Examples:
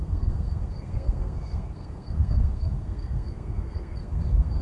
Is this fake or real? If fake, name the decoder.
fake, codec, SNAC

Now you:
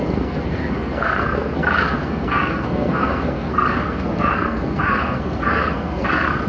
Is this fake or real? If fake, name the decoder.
fake, codec, SNAC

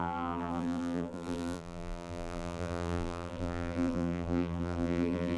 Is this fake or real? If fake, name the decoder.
fake, vocoder, BigVGAN v2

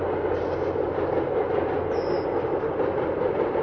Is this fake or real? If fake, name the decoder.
fake, vocoder, BigVGAN v2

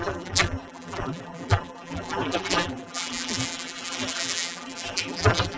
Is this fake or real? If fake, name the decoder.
fake, vocoder, BigVGAN v2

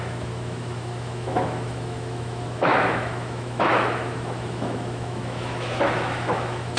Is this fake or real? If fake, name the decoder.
fake, autoencoder, DAC-VAE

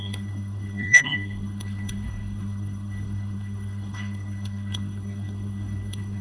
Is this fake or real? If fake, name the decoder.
fake, codec, SNAC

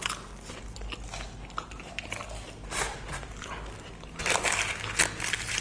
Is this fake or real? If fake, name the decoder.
real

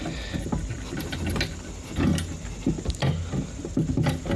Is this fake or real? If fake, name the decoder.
real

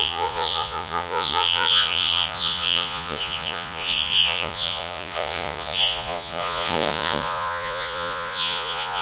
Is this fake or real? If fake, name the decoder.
fake, vocoder, Vocos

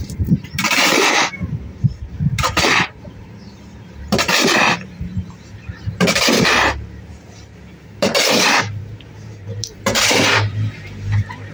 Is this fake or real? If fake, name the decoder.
fake, vocoder, BigVGAN v2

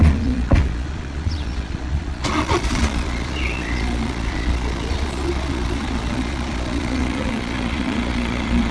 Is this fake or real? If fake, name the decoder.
fake, vocoder, Vocos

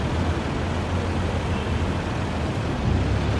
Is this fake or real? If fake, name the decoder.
real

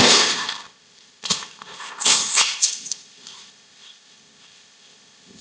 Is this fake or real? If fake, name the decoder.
fake, codec, ZipCodec